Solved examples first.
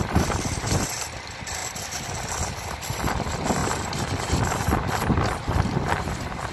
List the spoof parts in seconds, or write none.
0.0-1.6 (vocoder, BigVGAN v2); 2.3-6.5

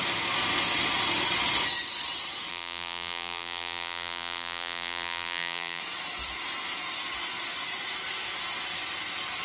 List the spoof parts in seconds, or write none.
2.5-5.8 (vocoder, BigVGAN v2)

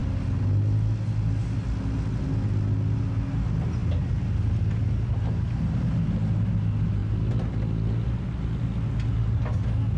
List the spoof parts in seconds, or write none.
3.8-5.3 (vocoder, BigVGAN v2)